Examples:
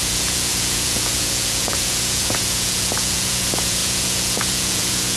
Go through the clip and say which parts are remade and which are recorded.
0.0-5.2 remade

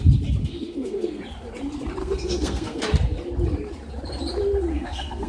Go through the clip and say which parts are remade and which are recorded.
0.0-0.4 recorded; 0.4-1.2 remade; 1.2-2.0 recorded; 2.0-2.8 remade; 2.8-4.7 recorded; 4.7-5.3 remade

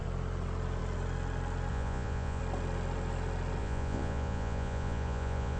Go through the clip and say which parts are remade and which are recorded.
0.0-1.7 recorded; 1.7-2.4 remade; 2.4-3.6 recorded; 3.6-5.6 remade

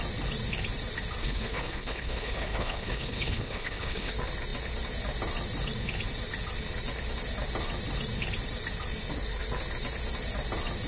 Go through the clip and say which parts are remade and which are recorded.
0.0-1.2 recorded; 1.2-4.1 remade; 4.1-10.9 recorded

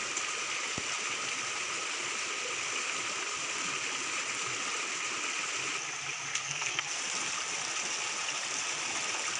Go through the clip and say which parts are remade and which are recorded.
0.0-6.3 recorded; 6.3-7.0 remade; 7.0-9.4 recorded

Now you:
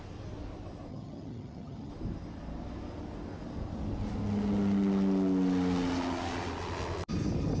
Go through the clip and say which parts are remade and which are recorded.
0.0-0.9 recorded; 0.9-1.9 remade; 1.9-7.6 recorded